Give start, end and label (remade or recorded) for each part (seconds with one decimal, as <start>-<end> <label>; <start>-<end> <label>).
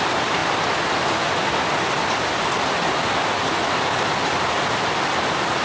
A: 0.0-5.6 recorded